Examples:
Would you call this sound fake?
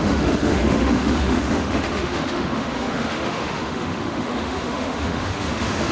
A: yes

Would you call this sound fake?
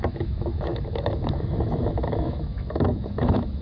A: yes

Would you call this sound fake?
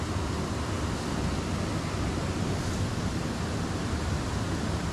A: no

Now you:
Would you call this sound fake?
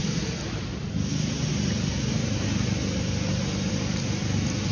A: no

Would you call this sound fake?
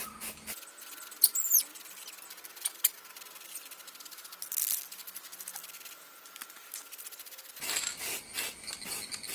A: no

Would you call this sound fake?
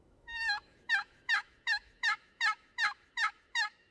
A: yes